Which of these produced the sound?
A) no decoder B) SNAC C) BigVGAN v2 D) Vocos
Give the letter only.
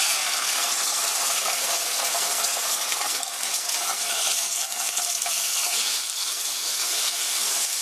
B